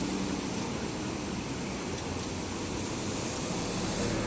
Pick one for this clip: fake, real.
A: real